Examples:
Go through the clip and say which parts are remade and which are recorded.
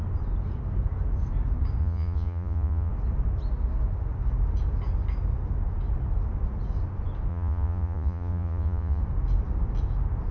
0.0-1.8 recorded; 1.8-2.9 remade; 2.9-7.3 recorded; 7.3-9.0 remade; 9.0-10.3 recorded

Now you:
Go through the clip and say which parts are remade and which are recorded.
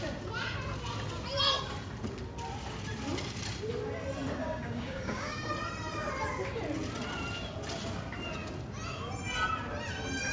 0.0-4.4 recorded; 4.4-5.5 remade; 5.5-10.3 recorded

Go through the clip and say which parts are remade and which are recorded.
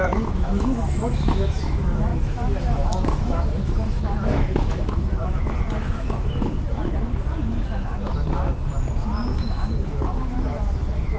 0.0-8.1 remade; 8.1-9.1 recorded; 9.1-11.2 remade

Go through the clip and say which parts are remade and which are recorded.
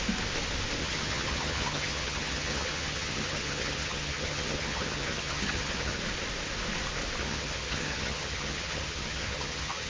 0.0-0.8 recorded; 0.8-6.0 remade; 6.0-7.2 recorded; 7.2-9.9 remade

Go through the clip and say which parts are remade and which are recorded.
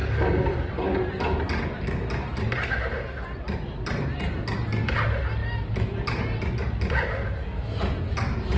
0.0-8.6 recorded